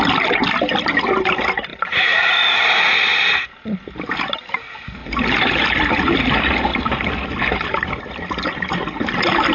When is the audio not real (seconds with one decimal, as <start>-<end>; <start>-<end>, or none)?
1.7-2.7